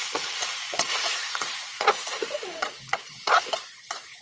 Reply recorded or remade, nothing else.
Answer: remade